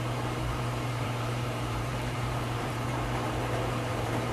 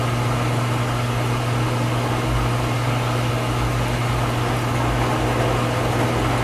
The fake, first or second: first